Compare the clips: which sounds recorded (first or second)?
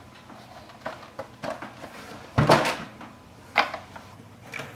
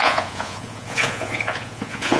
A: first